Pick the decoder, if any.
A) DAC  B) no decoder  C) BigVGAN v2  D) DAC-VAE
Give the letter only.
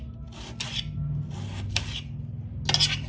B